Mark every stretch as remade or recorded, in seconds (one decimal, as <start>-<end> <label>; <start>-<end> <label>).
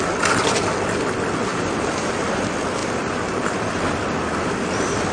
0.0-1.5 recorded; 1.5-2.1 remade; 2.1-2.8 recorded; 2.8-3.7 remade; 3.7-5.1 recorded